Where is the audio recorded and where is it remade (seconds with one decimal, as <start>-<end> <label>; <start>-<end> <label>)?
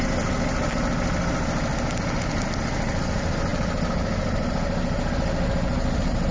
0.0-6.3 recorded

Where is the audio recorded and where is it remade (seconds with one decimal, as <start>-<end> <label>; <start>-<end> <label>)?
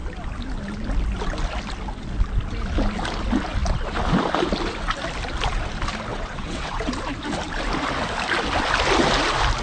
0.0-6.1 recorded; 6.1-6.9 remade; 6.9-9.6 recorded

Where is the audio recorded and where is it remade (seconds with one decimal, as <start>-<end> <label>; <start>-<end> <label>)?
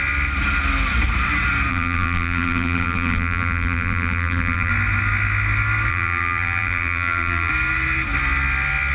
0.0-1.7 recorded; 1.7-4.7 remade; 4.7-5.9 recorded; 5.9-7.5 remade; 7.5-8.9 recorded